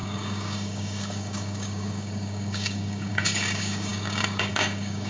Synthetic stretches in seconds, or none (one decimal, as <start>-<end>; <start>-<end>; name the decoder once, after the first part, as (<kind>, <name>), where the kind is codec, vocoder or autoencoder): 0.0-5.1 (codec, DAC)